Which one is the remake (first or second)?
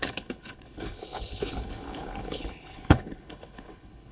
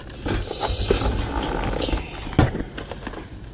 first